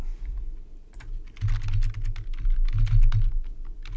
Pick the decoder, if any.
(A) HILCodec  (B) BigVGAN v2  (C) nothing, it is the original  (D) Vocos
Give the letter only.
C